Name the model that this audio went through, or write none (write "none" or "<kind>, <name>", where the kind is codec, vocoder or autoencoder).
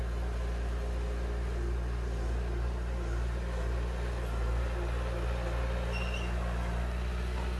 none